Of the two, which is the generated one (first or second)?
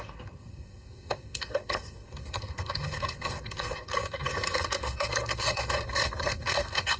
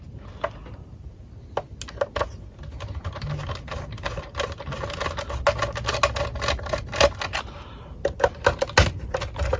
first